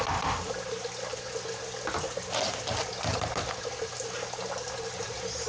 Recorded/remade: recorded